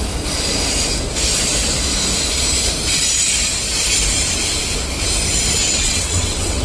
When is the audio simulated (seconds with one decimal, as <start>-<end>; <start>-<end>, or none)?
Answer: 5.6-6.6